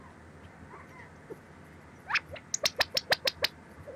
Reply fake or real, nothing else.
real